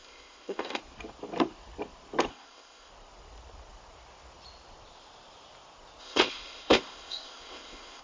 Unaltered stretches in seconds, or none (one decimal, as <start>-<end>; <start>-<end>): 0.8-2.3; 2.9-6.0